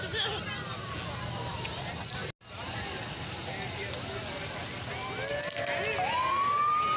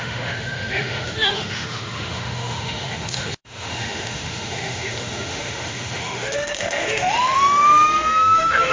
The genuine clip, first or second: first